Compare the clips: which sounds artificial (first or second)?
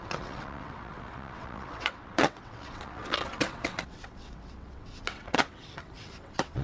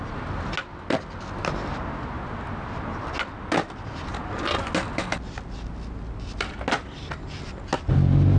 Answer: first